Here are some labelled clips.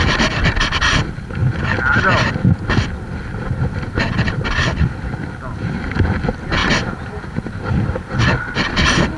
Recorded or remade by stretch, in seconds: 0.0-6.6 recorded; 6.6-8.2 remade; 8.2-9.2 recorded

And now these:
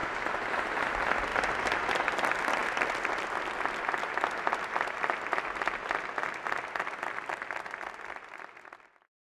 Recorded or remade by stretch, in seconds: 0.0-1.3 recorded; 1.3-1.9 remade; 1.9-9.3 recorded

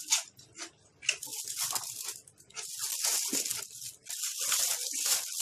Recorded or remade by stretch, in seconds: 0.0-5.4 recorded

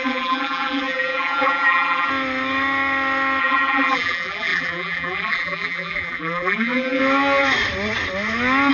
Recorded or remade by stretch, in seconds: 0.0-2.1 remade; 2.1-3.4 recorded; 3.4-7.0 remade; 7.0-8.7 recorded

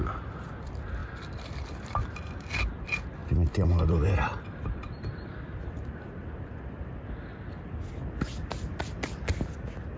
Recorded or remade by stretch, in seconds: 0.0-1.0 recorded; 1.0-2.0 remade; 2.0-3.2 recorded; 3.2-6.9 remade; 6.9-10.0 recorded

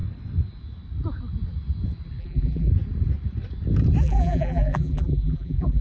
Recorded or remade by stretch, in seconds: 0.0-2.2 recorded; 2.2-2.7 remade; 2.7-4.0 recorded; 4.0-5.8 remade

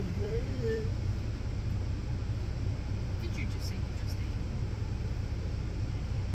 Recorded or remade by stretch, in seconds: 0.0-0.9 remade; 0.9-4.7 recorded; 4.7-6.3 remade